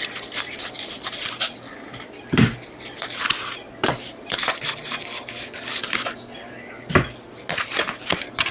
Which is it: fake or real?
real